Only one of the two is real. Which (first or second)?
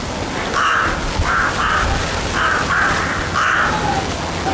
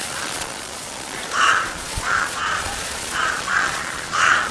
first